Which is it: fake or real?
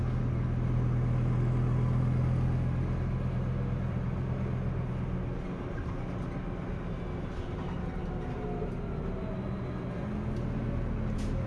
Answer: real